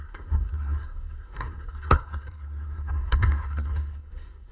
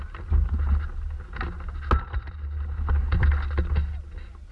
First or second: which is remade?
first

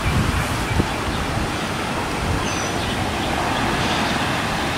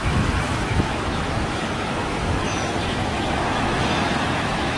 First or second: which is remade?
second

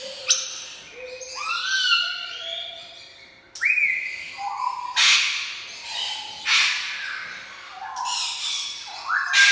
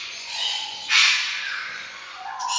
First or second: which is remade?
second